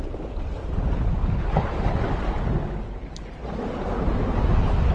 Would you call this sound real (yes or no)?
yes